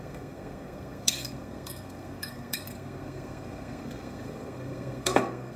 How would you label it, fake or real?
fake